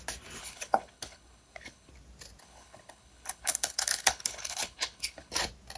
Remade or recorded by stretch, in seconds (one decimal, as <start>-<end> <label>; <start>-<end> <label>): 0.0-0.4 recorded; 0.4-1.9 remade; 1.9-2.4 recorded; 2.4-5.3 remade; 5.3-5.8 recorded